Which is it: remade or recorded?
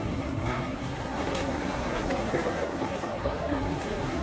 remade